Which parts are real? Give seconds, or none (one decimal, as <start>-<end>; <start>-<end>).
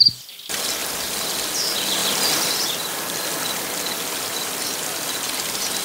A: 0.0-5.8